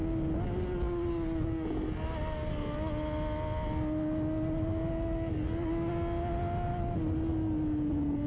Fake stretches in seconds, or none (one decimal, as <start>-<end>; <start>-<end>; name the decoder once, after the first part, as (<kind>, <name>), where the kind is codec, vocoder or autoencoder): none